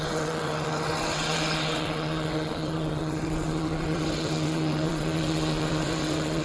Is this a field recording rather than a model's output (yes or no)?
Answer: no